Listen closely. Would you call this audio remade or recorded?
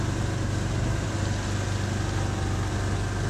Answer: recorded